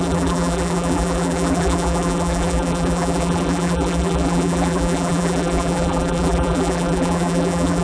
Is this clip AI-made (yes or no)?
yes